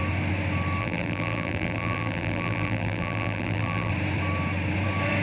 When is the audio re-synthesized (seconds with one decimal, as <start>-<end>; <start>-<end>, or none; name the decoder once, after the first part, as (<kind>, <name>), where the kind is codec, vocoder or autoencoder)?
0.8-3.9 (vocoder, BigVGAN v2)